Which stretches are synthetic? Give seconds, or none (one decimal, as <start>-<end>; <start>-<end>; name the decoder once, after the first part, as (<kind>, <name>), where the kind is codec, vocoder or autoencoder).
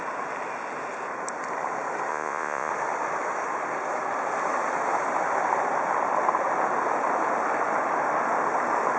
2.1-2.7 (vocoder, Vocos)